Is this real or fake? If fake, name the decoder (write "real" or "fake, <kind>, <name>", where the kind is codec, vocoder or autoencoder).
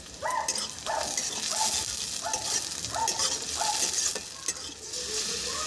real